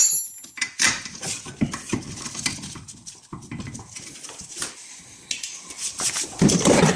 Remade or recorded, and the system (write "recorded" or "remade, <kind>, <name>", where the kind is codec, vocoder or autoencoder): recorded